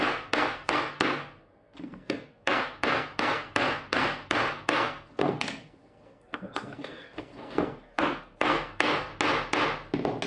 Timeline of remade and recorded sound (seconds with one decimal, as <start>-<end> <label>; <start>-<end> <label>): 0.0-9.1 remade; 9.1-10.3 recorded